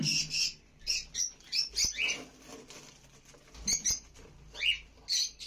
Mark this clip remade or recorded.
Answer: recorded